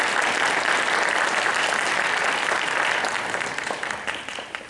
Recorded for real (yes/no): yes